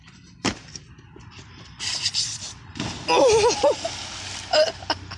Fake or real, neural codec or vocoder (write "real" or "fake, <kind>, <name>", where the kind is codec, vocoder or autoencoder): real